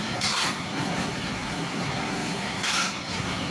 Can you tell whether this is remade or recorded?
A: remade